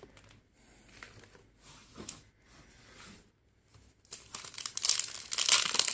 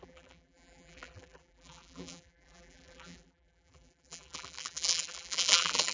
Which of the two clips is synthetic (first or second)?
second